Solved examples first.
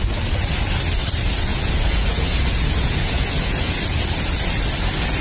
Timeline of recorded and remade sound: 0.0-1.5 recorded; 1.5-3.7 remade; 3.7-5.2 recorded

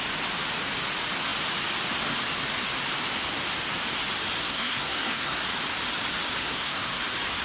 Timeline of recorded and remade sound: 0.0-4.4 recorded; 4.4-5.4 remade; 5.4-6.4 recorded; 6.4-7.0 remade; 7.0-7.4 recorded